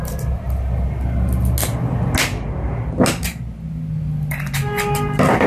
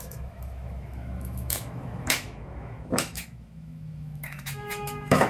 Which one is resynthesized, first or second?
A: second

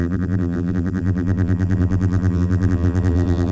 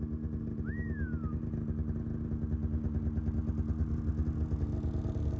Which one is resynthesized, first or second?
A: first